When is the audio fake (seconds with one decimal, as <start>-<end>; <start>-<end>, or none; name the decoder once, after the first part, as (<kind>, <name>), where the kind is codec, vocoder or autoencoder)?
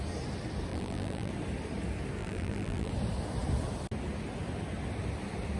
0.7-1.3 (vocoder, BigVGAN v2); 2.2-2.9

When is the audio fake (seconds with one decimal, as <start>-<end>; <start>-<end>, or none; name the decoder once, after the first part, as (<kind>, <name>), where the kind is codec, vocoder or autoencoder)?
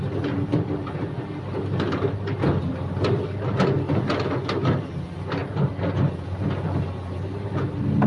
none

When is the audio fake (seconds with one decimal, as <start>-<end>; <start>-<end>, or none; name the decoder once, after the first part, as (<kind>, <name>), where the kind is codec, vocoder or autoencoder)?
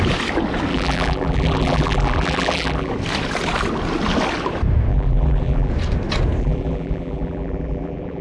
0.7-2.9 (vocoder, BigVGAN v2); 4.9-5.7; 6.4-8.2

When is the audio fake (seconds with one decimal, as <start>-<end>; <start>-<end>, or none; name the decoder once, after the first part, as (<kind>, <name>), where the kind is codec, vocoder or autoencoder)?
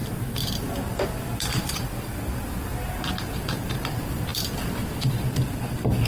0.0-6.1 (vocoder, BigVGAN v2)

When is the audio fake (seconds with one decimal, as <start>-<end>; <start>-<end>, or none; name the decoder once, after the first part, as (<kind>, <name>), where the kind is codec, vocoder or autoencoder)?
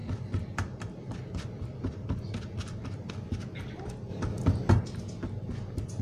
0.0-3.1 (vocoder, BigVGAN v2)